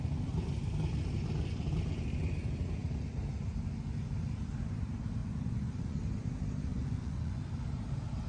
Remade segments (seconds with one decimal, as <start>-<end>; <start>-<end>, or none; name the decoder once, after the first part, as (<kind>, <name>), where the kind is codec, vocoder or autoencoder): 5.2-6.0 (vocoder, Vocos); 6.7-7.4